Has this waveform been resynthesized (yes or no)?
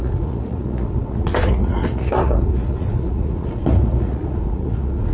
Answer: yes